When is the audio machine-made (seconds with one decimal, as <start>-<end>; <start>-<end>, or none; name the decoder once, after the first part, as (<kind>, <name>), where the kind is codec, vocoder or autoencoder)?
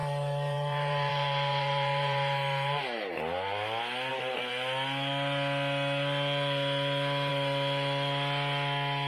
0.0-3.1 (vocoder, BigVGAN v2)